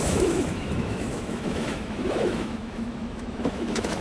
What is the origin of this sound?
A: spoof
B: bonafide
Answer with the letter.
A